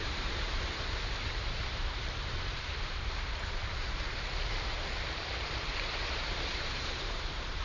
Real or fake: fake